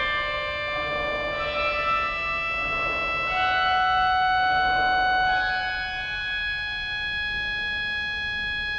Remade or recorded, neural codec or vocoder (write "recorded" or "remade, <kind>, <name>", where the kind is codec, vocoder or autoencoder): recorded